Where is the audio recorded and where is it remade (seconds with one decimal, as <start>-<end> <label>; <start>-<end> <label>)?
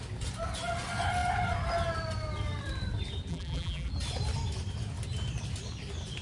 0.0-3.3 recorded; 3.3-3.9 remade; 3.9-6.2 recorded